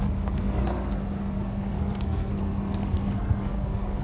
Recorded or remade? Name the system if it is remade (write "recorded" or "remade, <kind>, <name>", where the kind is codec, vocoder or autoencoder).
remade, codec, SNAC